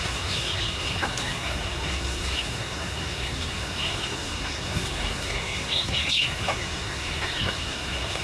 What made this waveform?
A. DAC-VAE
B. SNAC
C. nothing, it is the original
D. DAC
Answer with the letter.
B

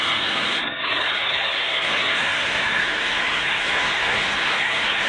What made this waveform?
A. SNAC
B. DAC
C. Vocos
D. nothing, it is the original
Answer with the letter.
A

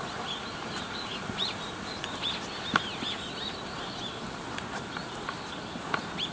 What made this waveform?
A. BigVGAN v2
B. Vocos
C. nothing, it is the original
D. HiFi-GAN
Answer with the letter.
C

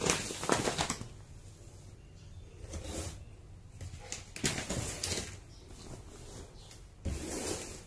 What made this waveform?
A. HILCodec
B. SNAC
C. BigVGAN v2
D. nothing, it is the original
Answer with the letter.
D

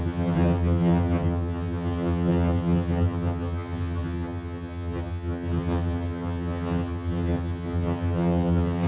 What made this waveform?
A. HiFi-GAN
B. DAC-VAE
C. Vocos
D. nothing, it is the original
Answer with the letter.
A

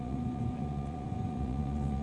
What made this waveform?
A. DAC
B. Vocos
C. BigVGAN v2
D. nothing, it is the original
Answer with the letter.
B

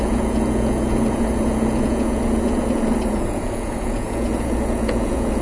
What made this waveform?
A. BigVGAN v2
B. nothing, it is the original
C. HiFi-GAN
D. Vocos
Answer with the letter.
D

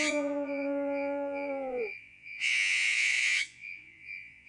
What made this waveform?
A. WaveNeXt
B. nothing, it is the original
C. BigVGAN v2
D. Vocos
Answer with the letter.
D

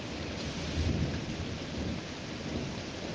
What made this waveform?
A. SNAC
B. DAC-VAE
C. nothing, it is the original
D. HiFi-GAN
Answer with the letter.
C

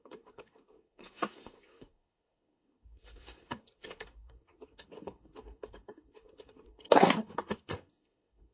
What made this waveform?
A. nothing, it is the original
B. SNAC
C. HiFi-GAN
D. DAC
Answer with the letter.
B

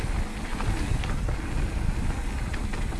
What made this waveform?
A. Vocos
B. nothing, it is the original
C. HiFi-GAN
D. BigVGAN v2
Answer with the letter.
B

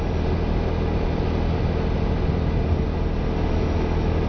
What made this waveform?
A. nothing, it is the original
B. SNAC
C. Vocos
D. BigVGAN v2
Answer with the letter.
A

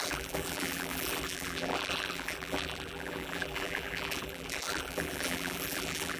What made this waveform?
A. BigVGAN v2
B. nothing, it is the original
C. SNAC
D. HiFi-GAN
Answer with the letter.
A